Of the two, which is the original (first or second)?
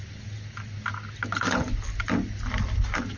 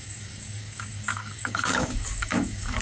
first